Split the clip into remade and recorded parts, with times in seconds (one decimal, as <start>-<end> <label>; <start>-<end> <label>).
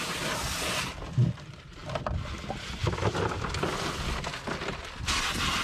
0.0-5.6 recorded